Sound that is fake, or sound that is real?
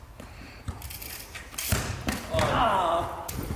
real